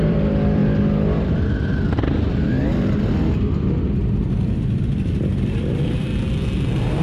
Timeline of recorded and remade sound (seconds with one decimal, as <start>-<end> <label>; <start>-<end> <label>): 0.0-0.6 remade; 0.6-4.8 recorded; 4.8-6.1 remade; 6.1-7.0 recorded